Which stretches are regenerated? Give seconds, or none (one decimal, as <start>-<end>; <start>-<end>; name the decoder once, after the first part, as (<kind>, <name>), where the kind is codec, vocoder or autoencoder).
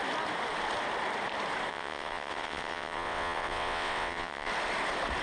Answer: 1.7-4.5 (vocoder, WaveNeXt)